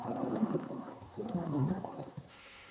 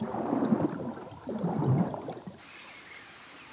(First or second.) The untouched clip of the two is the second